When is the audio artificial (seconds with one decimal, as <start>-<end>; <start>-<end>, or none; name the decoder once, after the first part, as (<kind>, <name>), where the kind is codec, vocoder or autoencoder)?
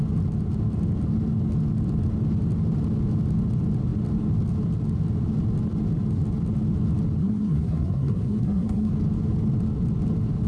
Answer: 7.2-8.9 (codec, SNAC)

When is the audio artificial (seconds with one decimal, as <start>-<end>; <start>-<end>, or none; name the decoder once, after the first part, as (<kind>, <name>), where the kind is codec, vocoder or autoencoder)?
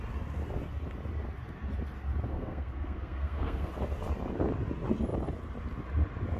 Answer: 2.3-3.7 (codec, SNAC)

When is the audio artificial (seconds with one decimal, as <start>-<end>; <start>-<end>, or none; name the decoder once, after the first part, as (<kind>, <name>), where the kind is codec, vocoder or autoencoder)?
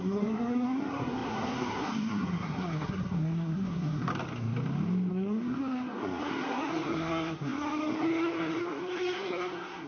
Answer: 0.0-4.1 (codec, SNAC); 5.1-9.9